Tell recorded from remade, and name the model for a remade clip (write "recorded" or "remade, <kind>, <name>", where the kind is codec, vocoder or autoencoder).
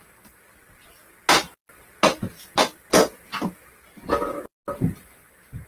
recorded